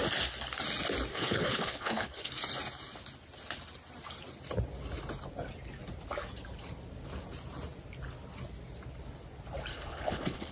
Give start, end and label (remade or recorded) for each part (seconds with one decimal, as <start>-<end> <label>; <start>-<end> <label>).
0.0-1.1 recorded; 1.1-2.3 remade; 2.3-9.7 recorded; 9.7-10.5 remade